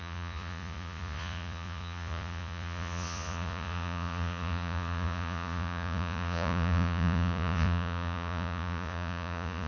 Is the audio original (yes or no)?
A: no